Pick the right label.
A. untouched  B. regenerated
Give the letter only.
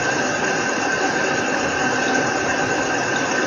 A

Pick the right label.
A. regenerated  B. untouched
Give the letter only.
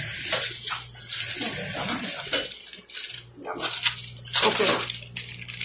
B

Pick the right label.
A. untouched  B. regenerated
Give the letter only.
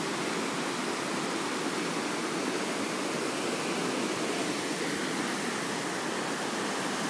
A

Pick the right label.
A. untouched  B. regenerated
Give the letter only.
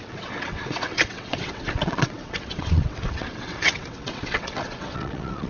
B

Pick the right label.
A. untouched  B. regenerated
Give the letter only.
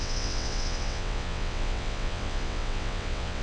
B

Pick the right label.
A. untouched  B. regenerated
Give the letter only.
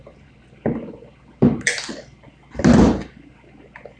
A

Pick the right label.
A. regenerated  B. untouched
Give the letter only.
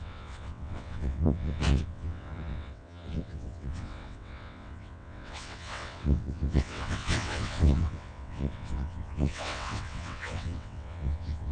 A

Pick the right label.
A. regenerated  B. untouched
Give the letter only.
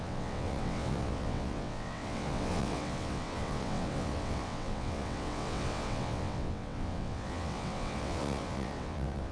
A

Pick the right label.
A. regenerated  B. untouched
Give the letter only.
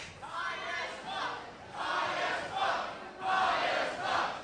B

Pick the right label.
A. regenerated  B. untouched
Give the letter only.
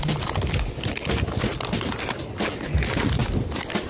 B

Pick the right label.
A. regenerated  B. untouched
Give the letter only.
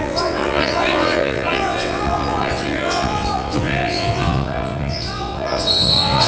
A